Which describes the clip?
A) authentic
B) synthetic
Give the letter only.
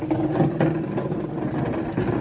A